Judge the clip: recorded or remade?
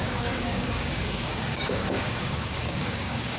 remade